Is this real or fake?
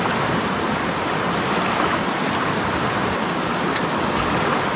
real